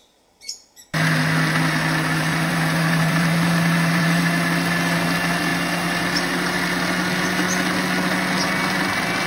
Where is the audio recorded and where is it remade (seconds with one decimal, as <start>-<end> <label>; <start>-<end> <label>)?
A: 0.0-2.3 recorded; 2.3-4.2 remade; 4.2-9.3 recorded